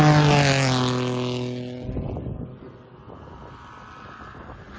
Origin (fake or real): real